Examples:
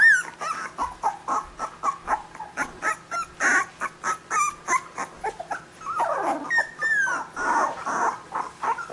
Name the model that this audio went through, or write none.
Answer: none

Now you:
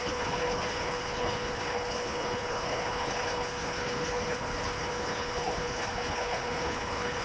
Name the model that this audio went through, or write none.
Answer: codec, HILCodec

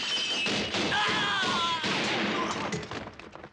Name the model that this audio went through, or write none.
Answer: none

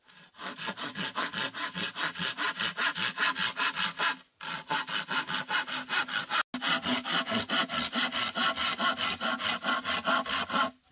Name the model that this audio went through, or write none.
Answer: none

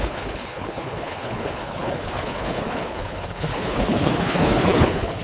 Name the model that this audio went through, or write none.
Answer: codec, HILCodec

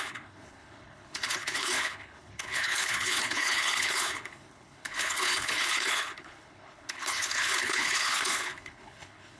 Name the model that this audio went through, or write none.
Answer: codec, HILCodec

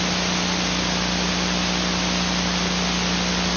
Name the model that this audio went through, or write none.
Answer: none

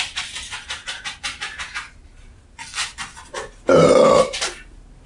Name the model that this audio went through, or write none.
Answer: none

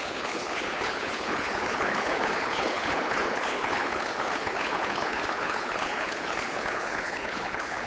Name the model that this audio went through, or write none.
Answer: codec, HILCodec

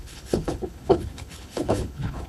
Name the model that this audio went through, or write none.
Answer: codec, HILCodec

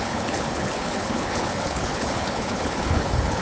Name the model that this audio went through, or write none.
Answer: codec, HILCodec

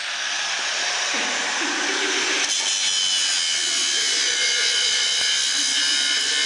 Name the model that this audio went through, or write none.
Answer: none